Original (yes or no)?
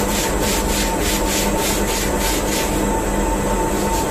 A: yes